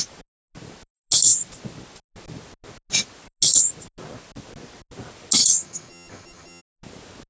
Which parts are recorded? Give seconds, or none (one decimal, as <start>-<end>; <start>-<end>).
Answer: 0.0-5.4; 6.6-7.3